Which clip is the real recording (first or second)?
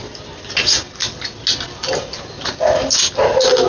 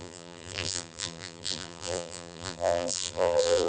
first